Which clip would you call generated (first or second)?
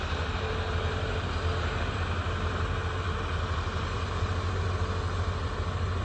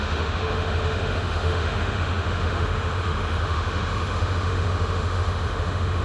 second